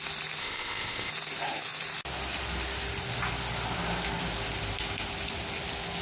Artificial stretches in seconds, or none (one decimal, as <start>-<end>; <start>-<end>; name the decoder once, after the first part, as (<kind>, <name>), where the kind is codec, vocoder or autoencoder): 0.4-1.1 (codec, ZipCodec)